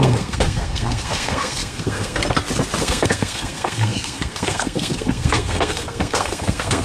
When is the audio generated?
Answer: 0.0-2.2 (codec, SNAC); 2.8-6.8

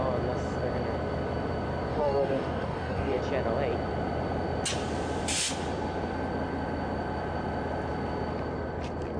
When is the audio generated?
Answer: 1.9-3.2 (codec, DAC)

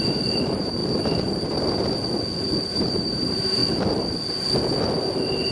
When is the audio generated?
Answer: 0.0-0.8 (vocoder, BigVGAN v2); 2.7-3.6

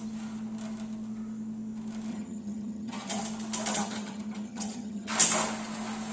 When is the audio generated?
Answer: 2.1-3.2 (vocoder, HiFi-GAN); 3.7-5.1

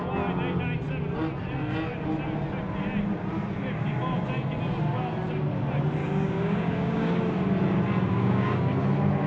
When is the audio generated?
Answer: 6.0-7.1 (codec, DAC); 8.1-8.7

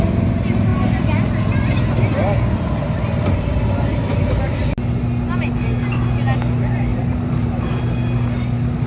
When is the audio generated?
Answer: 2.8-3.5 (vocoder, BigVGAN v2); 6.9-7.8